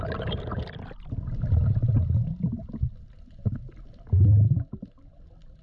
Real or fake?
real